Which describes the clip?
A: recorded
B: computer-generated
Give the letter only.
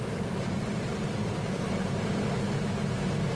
A